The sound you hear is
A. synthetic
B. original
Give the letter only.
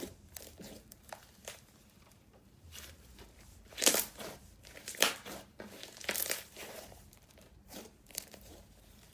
A